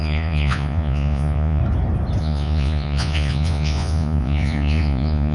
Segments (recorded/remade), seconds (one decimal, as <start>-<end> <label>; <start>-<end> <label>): 0.0-1.6 remade; 1.6-2.2 recorded; 2.2-5.3 remade